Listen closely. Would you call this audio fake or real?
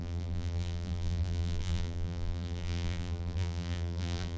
fake